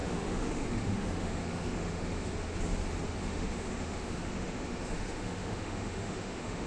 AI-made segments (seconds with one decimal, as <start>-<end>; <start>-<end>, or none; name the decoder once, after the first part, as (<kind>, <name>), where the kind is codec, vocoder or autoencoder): 0.0-2.3 (autoencoder, DAC-VAE); 3.2-6.7